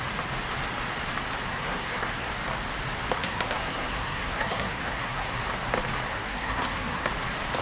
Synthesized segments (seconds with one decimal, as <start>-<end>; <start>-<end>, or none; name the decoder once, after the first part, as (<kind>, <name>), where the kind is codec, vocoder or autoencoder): 1.5-2.3 (codec, SNAC); 3.2-5.4; 6.1-7.1